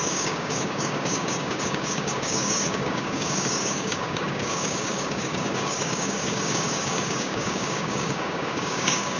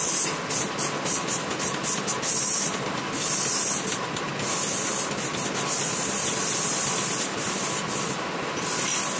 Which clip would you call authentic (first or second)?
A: second